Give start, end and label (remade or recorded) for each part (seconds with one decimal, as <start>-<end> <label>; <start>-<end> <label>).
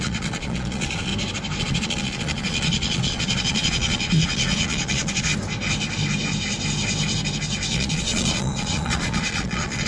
0.0-1.1 remade; 1.1-1.6 recorded; 1.6-5.3 remade; 5.3-7.7 recorded; 7.7-9.9 remade